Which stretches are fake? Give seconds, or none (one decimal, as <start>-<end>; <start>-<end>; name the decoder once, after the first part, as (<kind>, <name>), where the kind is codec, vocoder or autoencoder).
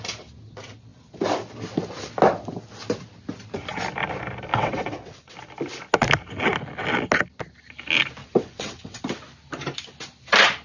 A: 4.5-5.3 (vocoder, WaveNeXt); 8.2-9.0